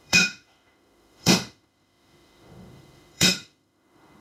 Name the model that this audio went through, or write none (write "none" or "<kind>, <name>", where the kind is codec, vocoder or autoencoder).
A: autoencoder, DAC-VAE